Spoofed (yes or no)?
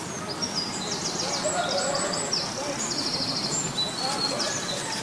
no